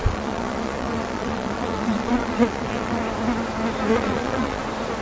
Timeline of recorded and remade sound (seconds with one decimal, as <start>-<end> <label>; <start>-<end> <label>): 0.0-3.0 remade; 3.0-3.9 recorded; 3.9-4.6 remade; 4.6-5.0 recorded